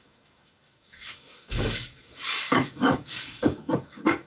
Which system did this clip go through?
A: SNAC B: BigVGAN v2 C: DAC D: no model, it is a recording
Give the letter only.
C